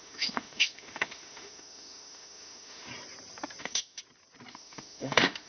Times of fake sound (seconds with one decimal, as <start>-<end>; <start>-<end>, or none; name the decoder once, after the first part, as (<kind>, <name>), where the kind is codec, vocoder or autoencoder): 0.0-2.9 (autoencoder, DAC-VAE); 3.6-4.0; 4.5-5.5